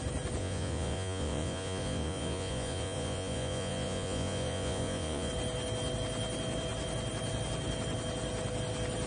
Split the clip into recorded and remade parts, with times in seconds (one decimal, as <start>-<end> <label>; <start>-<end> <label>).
0.0-0.4 recorded; 0.4-5.3 remade; 5.3-9.1 recorded